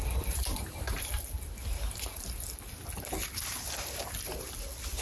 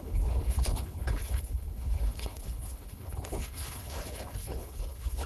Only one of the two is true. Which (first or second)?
first